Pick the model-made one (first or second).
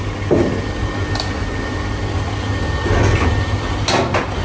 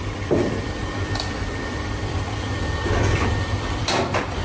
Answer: second